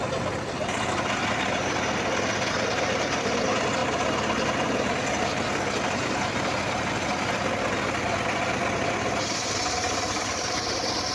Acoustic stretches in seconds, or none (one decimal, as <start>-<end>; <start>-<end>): 0.0-11.1